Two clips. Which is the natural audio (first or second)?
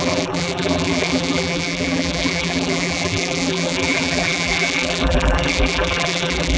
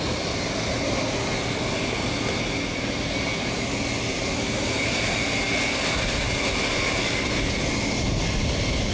second